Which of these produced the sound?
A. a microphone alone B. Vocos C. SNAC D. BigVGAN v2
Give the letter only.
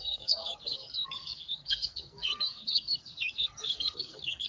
C